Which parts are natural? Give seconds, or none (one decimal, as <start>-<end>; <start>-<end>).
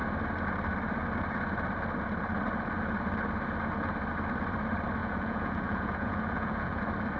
0.0-5.0; 6.8-7.2